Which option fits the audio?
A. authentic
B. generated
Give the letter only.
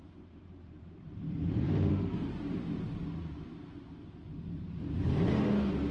B